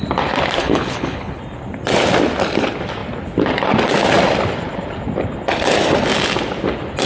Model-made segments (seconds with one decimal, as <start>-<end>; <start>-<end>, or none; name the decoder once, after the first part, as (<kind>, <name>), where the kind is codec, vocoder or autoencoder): 0.6-1.4 (codec, HILCodec)